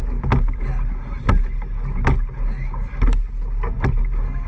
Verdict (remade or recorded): recorded